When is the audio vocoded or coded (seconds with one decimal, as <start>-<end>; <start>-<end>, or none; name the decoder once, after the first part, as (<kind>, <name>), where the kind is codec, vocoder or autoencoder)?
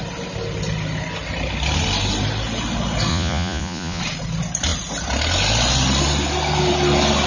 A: 3.1-4.0 (vocoder, Vocos)